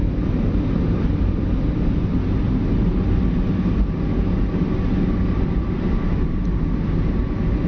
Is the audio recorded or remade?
recorded